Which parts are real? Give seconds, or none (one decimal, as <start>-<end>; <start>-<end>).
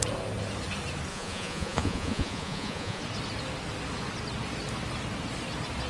0.0-1.1; 3.0-5.9